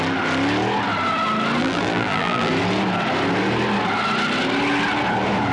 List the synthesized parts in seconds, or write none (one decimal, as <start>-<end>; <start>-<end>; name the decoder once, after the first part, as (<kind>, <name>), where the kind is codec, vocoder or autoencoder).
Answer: 1.6-2.5 (vocoder, BigVGAN v2)